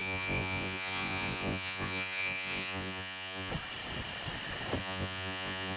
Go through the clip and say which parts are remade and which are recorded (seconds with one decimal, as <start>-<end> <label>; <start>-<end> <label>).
0.0-3.5 remade; 3.5-4.8 recorded; 4.8-5.8 remade